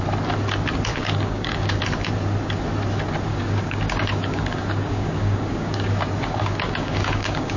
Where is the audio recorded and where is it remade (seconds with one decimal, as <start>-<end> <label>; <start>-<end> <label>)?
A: 0.0-0.9 recorded; 0.9-1.8 remade; 1.8-3.3 recorded; 3.3-7.6 remade